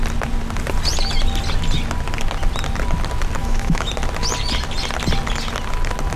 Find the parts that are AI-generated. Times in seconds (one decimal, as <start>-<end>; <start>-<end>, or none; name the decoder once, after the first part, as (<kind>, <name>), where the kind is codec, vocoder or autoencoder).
3.4-3.9 (autoencoder, DAC-VAE)